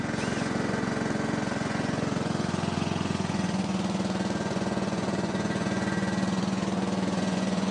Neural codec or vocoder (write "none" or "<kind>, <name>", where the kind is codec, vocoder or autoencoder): vocoder, Vocos